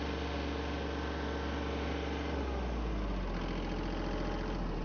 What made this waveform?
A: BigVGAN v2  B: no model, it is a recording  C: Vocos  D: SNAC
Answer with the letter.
B